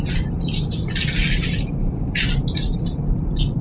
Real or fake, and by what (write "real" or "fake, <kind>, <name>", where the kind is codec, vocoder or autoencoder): real